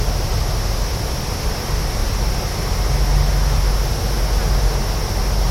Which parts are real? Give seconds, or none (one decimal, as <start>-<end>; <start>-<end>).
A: 0.0-5.5